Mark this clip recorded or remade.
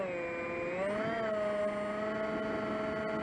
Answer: recorded